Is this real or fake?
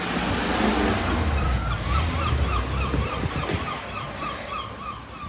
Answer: real